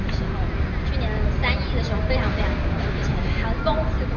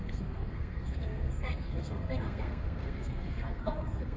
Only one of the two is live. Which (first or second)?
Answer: first